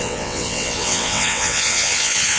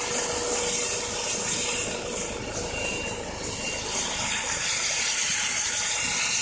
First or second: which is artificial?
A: first